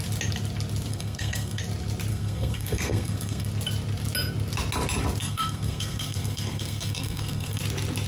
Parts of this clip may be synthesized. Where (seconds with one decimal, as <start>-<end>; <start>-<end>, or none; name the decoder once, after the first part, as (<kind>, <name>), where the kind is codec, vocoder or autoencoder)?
0.9-1.6 (codec, SNAC); 2.1-3.5; 5.2-7.6

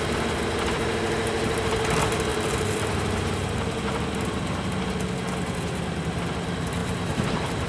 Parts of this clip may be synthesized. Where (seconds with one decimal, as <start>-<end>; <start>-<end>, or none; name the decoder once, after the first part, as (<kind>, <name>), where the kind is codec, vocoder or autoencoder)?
2.3-4.2 (vocoder, BigVGAN v2); 6.8-7.7

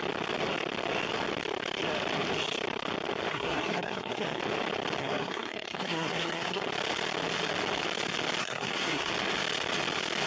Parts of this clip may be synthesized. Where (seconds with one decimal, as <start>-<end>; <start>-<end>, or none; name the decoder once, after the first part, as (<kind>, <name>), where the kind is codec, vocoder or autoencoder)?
3.3-4.4 (codec, SNAC); 5.0-6.6; 8.4-9.1

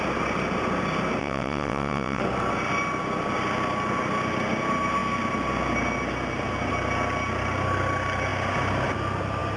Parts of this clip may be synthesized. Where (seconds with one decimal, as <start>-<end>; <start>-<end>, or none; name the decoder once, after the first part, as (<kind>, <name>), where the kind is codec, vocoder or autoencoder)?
1.2-2.2 (vocoder, WaveNeXt)

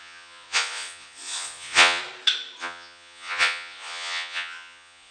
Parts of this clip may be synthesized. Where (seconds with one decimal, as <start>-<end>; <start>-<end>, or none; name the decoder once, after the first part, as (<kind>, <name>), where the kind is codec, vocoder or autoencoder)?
0.0-2.0 (vocoder, Vocos); 2.6-5.1

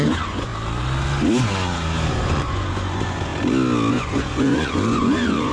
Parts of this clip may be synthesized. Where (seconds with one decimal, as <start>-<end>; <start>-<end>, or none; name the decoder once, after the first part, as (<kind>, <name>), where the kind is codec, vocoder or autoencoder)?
0.0-0.5 (vocoder, Vocos); 2.1-3.3; 3.9-5.5